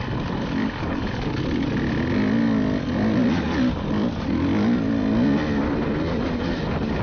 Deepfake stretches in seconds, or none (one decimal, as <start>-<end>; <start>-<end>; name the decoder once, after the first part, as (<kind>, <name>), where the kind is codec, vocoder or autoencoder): 0.6-1.4 (codec, DAC)